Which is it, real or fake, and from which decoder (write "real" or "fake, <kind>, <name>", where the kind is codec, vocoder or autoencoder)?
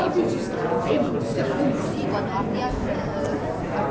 real